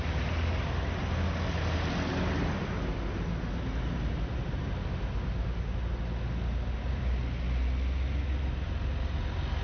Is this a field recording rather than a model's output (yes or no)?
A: yes